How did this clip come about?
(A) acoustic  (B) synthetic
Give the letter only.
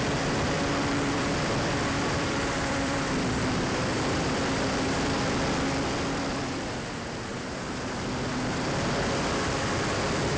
B